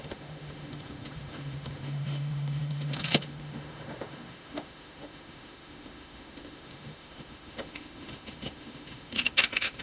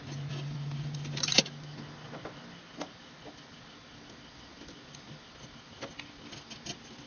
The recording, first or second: second